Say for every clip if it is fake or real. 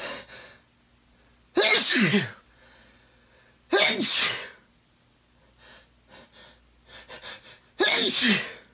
real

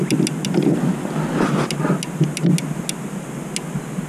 real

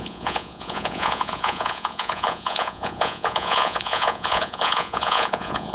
fake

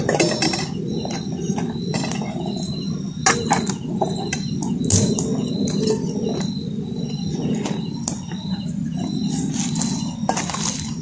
real